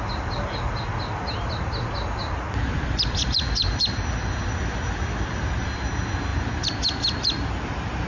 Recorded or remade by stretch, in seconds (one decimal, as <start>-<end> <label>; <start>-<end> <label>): 0.0-2.6 recorded; 2.6-5.8 remade; 5.8-6.3 recorded; 6.3-7.5 remade; 7.5-8.1 recorded